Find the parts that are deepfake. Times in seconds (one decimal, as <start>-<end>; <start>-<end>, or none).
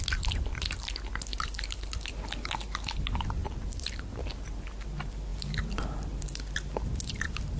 1.3-2.1; 3.4-4.2